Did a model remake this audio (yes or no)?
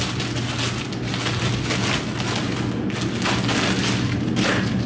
no